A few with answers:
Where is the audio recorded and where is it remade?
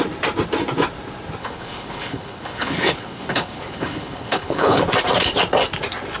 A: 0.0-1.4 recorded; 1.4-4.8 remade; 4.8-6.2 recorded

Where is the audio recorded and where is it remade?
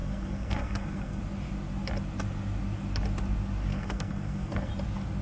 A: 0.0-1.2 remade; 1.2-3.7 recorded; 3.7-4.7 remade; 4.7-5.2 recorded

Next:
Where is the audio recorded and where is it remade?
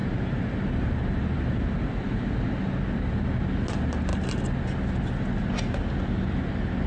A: 0.0-2.5 remade; 2.5-6.9 recorded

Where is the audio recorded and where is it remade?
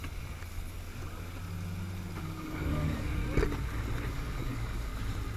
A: 0.0-2.2 recorded; 2.2-3.2 remade; 3.2-4.1 recorded; 4.1-4.9 remade; 4.9-5.4 recorded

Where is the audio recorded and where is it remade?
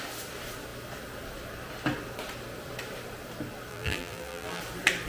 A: 0.0-3.7 recorded; 3.7-4.6 remade; 4.6-5.1 recorded